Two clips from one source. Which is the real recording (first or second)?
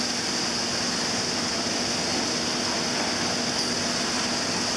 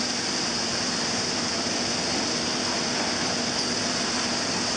first